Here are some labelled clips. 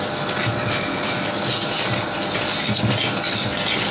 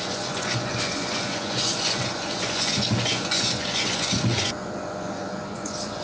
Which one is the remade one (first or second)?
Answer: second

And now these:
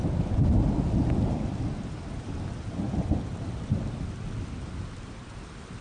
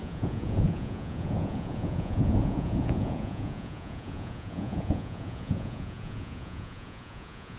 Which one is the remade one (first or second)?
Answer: second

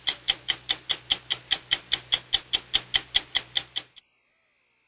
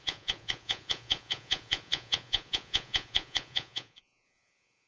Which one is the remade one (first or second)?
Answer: second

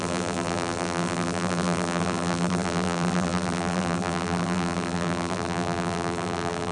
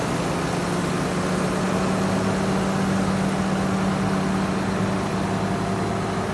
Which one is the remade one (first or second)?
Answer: first